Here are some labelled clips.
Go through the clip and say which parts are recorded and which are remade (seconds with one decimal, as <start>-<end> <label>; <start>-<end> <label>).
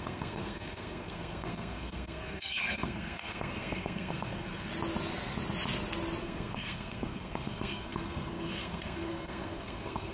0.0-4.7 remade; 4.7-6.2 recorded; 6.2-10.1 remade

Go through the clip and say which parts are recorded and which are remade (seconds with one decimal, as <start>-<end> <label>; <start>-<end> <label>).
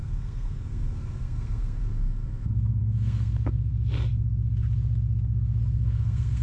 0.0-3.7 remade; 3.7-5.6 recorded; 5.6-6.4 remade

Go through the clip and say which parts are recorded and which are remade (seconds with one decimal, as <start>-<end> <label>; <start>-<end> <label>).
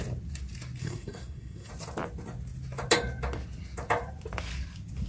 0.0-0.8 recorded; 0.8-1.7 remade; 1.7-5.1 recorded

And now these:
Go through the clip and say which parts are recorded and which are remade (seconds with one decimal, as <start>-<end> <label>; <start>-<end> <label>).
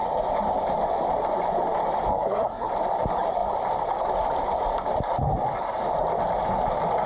0.0-2.1 recorded; 2.1-2.7 remade; 2.7-7.1 recorded